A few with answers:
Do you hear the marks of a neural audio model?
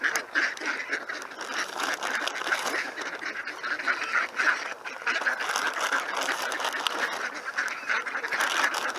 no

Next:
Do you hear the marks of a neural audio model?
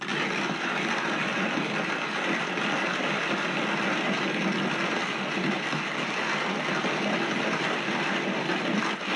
no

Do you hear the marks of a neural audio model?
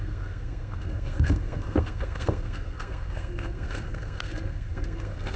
yes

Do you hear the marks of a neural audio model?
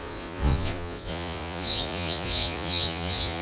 yes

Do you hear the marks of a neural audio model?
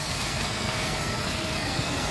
yes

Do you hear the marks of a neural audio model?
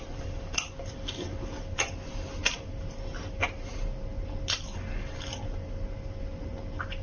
no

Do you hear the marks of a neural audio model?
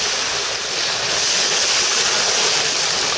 no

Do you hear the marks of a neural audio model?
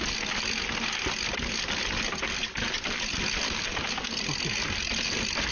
no